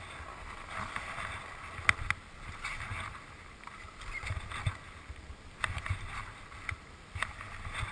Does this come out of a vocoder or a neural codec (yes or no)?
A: no